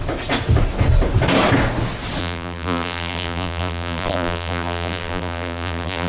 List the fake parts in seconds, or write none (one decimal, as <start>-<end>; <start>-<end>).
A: 2.2-6.1